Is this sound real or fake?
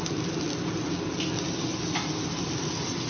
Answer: real